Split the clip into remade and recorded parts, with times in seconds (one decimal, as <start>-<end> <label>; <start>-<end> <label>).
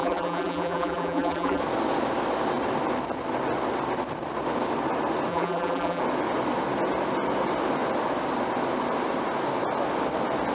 0.0-1.6 remade; 1.6-5.3 recorded; 5.3-6.0 remade; 6.0-10.5 recorded